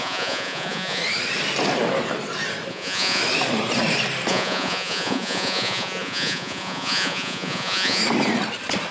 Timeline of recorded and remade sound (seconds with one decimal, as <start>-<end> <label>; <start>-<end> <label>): 0.0-1.0 remade; 1.0-2.7 recorded; 2.7-3.2 remade; 3.2-4.3 recorded; 4.3-8.0 remade; 8.0-8.9 recorded